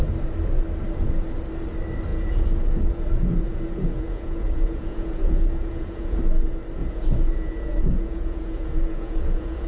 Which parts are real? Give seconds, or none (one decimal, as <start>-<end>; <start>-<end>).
0.0-2.1; 6.2-6.8